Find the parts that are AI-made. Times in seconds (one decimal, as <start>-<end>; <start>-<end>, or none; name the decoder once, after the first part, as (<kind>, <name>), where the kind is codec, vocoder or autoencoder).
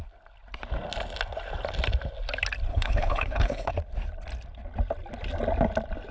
2.7-3.7 (codec, HILCodec)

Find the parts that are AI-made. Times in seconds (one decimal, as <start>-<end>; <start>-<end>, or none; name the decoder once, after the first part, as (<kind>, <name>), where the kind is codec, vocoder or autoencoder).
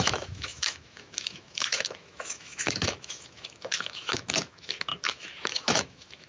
0.0-6.3 (autoencoder, DAC-VAE)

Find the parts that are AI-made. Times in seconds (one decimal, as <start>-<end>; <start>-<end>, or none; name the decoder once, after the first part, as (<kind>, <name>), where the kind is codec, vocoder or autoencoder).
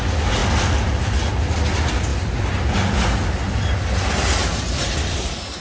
none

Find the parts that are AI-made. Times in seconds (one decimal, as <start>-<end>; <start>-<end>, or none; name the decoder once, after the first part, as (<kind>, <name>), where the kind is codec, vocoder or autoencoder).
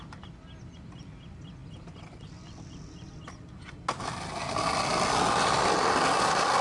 none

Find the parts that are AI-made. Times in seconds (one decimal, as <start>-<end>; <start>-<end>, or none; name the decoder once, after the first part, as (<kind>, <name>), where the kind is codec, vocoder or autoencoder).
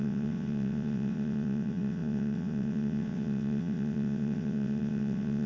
0.0-5.5 (vocoder, WaveNeXt)